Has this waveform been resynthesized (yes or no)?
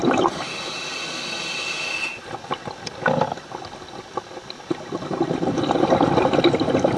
no